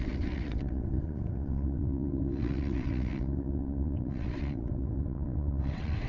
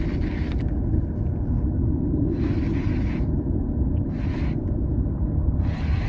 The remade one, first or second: first